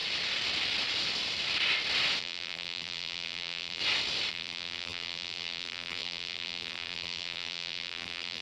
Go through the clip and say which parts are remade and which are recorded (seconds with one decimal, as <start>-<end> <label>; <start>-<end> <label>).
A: 0.0-2.2 recorded; 2.2-3.8 remade; 3.8-4.3 recorded; 4.3-8.4 remade